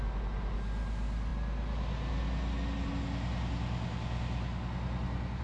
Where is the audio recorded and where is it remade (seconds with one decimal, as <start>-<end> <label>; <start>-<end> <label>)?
0.0-5.4 recorded